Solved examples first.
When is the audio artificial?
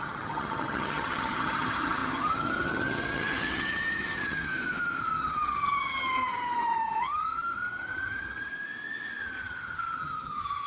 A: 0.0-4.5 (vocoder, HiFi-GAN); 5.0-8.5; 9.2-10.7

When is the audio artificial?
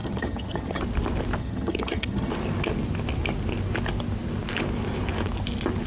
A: 0.0-0.8 (vocoder, HiFi-GAN); 1.4-2.3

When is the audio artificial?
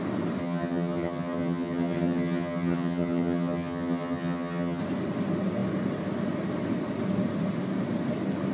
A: 0.4-4.8 (vocoder, HiFi-GAN)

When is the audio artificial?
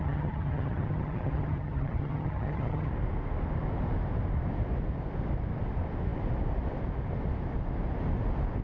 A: 0.0-2.9 (vocoder, HiFi-GAN)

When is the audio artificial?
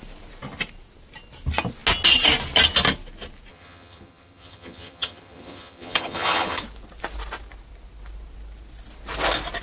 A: 3.5-6.6 (vocoder, HiFi-GAN)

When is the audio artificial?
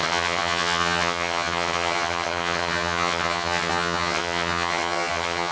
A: 0.0-5.5 (vocoder, HiFi-GAN)